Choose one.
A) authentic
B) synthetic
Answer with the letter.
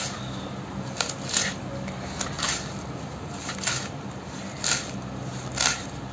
B